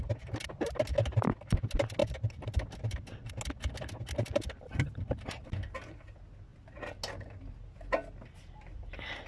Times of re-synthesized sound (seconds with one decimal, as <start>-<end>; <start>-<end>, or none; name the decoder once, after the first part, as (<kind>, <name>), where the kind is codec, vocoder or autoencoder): none